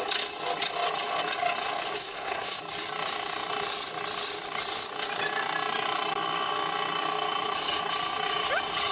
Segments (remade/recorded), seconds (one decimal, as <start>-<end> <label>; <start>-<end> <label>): 0.0-2.0 recorded; 2.0-2.6 remade; 2.6-8.9 recorded